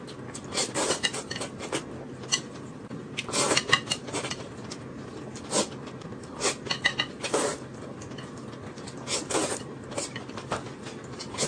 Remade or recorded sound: recorded